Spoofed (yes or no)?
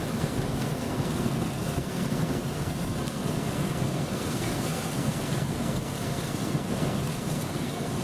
yes